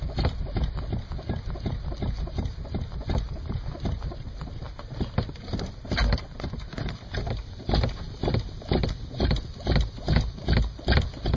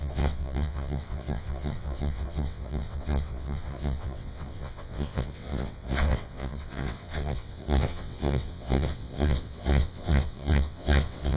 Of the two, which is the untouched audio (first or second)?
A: first